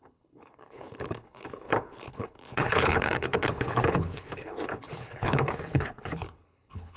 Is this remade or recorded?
remade